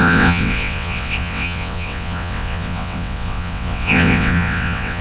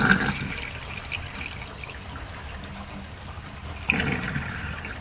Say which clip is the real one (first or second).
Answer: second